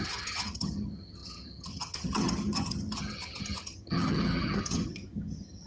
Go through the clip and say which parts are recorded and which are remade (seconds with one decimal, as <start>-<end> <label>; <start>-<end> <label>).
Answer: 0.0-5.7 remade